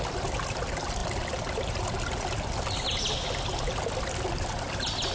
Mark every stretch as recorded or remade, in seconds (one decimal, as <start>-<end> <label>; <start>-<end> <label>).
0.0-5.1 recorded